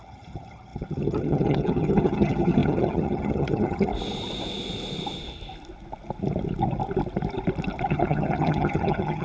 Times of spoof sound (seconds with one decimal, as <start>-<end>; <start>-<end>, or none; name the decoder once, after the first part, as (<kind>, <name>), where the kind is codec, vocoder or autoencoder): 0.0-3.9 (vocoder, HiFi-GAN); 7.9-9.2